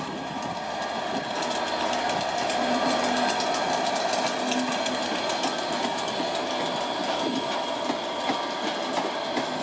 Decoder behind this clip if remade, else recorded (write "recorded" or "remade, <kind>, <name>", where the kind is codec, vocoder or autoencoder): recorded